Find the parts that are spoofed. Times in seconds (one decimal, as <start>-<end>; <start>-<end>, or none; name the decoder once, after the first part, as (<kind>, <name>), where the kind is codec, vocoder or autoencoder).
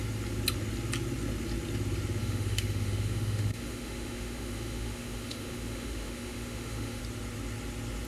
2.2-7.0 (autoencoder, DAC-VAE)